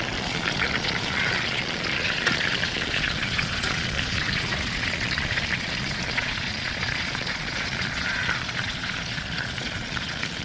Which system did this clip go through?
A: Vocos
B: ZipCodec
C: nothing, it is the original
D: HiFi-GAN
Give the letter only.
A